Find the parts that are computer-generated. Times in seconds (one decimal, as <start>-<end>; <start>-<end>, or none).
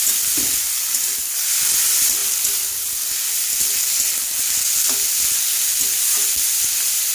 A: none